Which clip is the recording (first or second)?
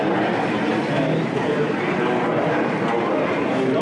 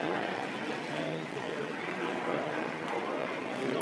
first